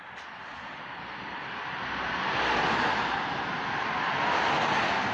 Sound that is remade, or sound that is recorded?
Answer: recorded